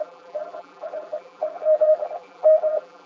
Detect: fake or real fake